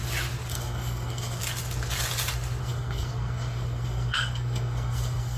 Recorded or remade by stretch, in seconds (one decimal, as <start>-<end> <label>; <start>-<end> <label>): 0.0-0.5 recorded; 0.5-1.4 remade; 1.4-2.6 recorded; 2.6-5.4 remade